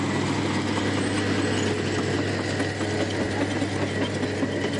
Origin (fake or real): real